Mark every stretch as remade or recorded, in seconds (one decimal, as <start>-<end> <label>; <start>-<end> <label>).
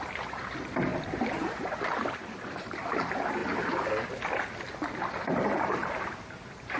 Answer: 0.0-0.9 recorded; 0.9-2.7 remade; 2.7-5.8 recorded; 5.8-6.8 remade